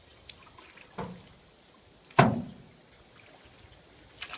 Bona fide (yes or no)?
yes